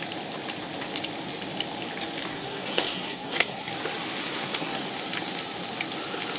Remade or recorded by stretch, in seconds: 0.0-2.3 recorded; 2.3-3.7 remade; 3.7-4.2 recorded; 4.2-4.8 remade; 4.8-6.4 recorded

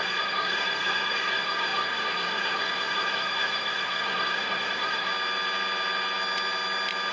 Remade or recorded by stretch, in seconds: 0.0-5.1 remade; 5.1-7.1 recorded

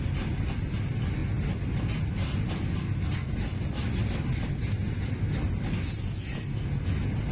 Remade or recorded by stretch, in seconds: 0.0-7.3 recorded

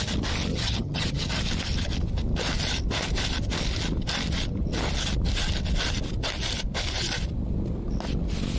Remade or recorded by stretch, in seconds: 0.0-0.5 recorded; 0.5-1.4 remade; 1.4-8.6 recorded

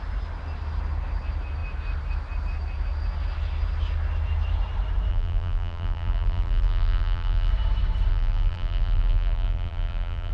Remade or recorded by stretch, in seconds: 0.0-5.1 recorded; 5.1-7.5 remade; 7.5-8.1 recorded; 8.1-10.3 remade